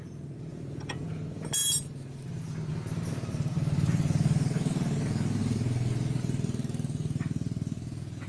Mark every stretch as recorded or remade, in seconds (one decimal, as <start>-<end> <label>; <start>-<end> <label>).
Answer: 0.0-0.5 recorded; 0.5-1.1 remade; 1.1-8.3 recorded